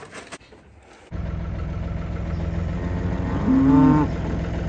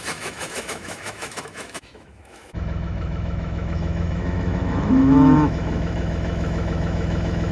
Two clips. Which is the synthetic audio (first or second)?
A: second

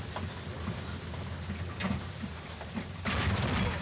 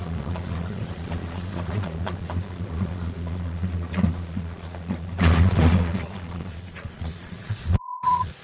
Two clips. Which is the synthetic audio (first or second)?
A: second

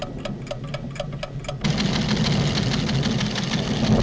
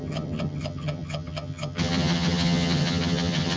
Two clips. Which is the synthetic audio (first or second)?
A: second